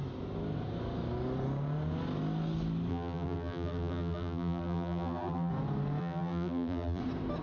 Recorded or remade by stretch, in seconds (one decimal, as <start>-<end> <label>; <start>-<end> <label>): 0.0-2.9 recorded; 2.9-5.5 remade; 5.5-6.0 recorded; 6.0-7.0 remade; 7.0-7.4 recorded